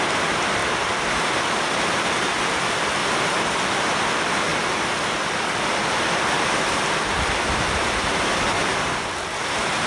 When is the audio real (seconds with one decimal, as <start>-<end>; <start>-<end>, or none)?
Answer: 0.6-1.3; 3.0-3.5